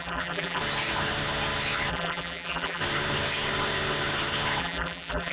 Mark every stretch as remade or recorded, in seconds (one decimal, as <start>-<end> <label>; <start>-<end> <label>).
0.0-0.6 remade; 0.6-1.9 recorded; 1.9-2.8 remade; 2.8-4.6 recorded; 4.6-5.3 remade